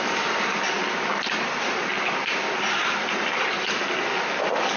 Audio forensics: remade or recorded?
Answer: recorded